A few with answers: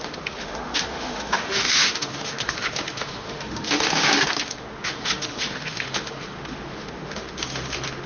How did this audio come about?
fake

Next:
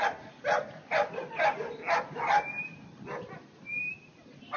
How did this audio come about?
real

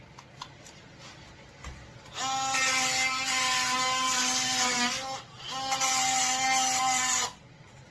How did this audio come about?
real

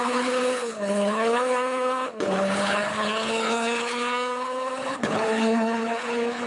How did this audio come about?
fake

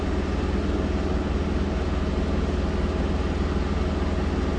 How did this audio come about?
real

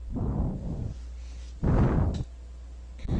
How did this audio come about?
real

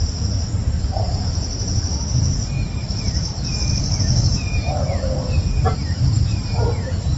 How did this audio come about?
fake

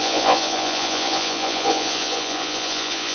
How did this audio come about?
fake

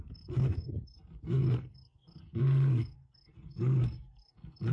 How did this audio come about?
fake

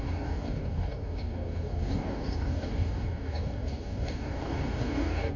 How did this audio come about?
fake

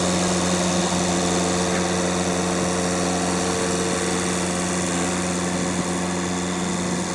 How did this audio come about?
real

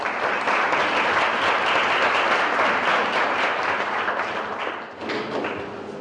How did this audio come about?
real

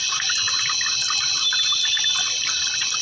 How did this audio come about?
real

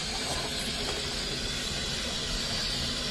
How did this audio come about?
real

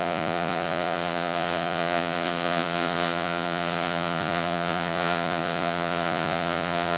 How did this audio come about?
fake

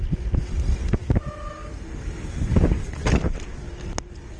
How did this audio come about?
real